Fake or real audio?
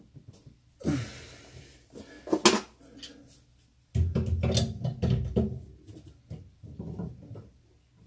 real